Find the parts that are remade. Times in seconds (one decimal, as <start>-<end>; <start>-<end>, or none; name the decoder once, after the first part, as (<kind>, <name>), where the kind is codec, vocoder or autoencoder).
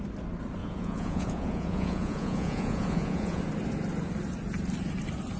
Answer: 0.6-3.4 (vocoder, Vocos)